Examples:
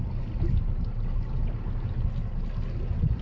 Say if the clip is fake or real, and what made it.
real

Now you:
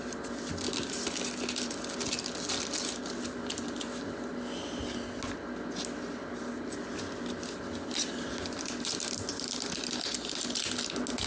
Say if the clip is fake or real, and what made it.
real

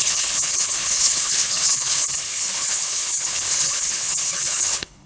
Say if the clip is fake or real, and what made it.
fake, codec, HILCodec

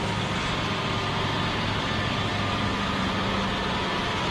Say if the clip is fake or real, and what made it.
real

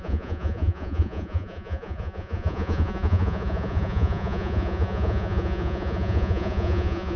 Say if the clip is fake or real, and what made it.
fake, vocoder, Vocos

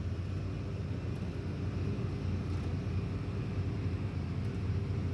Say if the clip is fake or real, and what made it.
real